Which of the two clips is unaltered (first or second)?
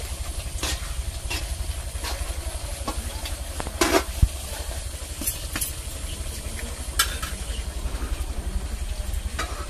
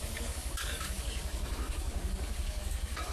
first